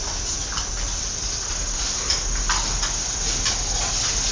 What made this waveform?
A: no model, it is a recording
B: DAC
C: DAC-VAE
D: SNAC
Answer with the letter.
A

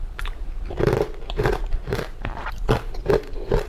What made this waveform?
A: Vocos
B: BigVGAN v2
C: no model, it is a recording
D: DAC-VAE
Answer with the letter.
B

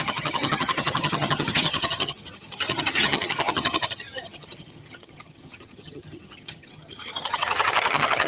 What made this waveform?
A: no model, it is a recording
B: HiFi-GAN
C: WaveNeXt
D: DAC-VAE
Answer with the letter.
B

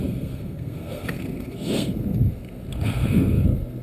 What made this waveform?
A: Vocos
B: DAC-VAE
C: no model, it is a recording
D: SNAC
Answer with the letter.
D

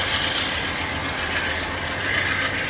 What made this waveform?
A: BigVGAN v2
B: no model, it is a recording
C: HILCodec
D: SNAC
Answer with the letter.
B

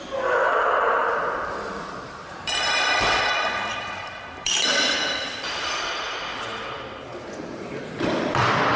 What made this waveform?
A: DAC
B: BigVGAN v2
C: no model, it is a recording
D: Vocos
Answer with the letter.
B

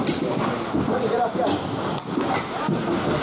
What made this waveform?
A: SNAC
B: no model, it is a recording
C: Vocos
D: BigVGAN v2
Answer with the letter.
B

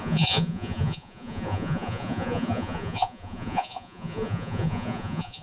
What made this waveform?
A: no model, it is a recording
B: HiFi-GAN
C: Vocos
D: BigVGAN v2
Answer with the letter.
C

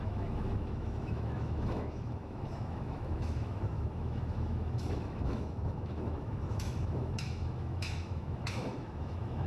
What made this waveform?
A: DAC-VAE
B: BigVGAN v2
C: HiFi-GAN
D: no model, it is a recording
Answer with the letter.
A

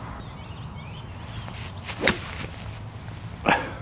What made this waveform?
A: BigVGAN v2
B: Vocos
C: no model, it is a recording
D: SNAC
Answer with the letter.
C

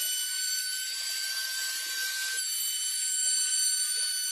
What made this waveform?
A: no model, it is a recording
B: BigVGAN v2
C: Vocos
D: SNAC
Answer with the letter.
B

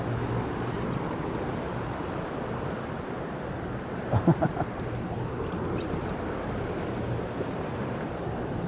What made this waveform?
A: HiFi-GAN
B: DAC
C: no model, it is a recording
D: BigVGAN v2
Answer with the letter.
C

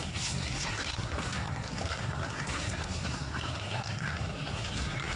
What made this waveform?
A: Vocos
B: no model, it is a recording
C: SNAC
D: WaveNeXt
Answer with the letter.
C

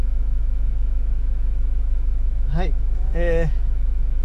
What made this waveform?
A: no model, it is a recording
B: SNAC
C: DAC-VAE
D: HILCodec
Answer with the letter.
C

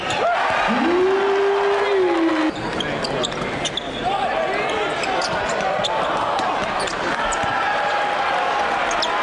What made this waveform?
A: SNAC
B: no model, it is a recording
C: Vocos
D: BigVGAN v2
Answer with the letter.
B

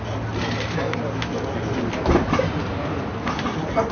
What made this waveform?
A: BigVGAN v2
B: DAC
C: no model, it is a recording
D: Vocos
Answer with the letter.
C